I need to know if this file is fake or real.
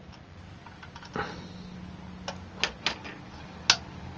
real